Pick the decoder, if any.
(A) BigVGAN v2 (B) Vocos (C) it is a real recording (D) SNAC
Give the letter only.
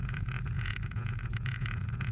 B